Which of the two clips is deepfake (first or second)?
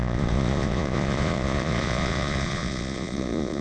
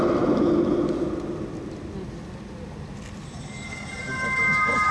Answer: first